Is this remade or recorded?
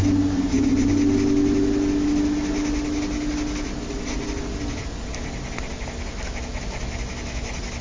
recorded